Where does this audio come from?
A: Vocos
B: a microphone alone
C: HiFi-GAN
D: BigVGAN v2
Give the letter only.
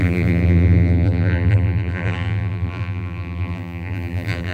D